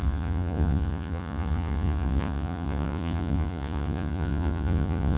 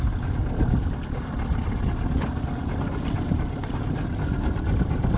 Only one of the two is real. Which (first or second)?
second